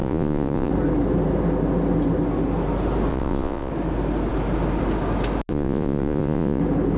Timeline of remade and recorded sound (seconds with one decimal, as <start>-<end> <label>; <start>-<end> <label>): 0.0-0.7 remade; 0.7-3.1 recorded; 3.1-3.7 remade; 3.7-5.5 recorded; 5.5-6.6 remade; 6.6-7.0 recorded